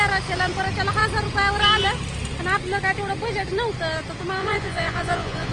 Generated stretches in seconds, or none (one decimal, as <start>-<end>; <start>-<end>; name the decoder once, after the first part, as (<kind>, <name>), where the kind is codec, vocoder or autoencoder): 4.4-5.5 (vocoder, Vocos)